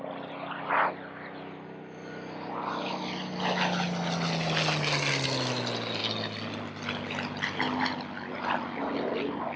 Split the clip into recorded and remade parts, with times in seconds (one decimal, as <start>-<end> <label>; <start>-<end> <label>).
0.0-9.6 recorded

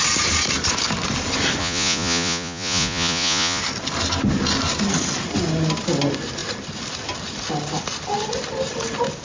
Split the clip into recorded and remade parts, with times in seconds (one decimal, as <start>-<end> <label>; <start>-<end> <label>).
0.0-1.6 recorded; 1.6-3.6 remade; 3.6-9.2 recorded

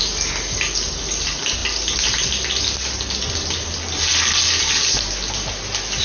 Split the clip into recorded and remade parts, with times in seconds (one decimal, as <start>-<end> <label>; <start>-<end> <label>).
0.0-6.0 recorded

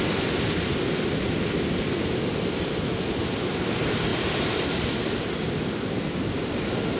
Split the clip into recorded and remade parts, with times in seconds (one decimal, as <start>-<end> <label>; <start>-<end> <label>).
0.0-7.0 recorded

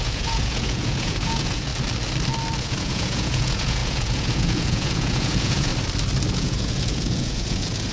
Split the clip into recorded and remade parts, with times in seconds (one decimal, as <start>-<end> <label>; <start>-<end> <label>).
0.0-1.7 remade; 1.7-2.6 recorded; 2.6-5.7 remade; 5.7-6.3 recorded; 6.3-7.9 remade

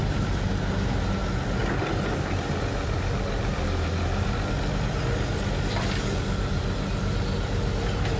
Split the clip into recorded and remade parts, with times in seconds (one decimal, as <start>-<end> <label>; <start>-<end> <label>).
0.0-8.2 recorded